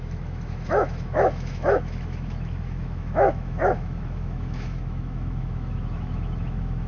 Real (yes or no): no